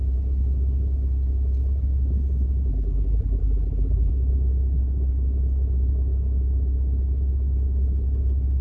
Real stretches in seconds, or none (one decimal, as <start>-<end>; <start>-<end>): 0.0-2.7; 4.1-8.6